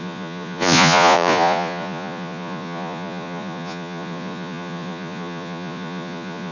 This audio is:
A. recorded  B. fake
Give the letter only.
B